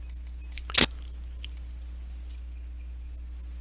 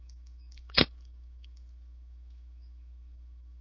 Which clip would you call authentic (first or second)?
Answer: first